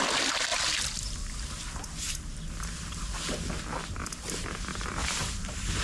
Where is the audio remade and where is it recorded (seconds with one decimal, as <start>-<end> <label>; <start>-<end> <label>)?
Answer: 0.0-4.7 recorded; 4.7-5.8 remade